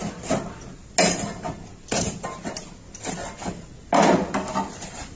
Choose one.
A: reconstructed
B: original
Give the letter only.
B